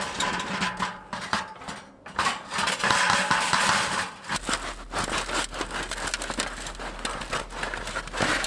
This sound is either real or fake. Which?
real